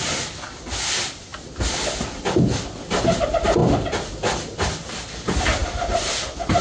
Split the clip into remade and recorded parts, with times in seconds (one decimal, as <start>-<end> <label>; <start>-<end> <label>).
0.0-6.6 recorded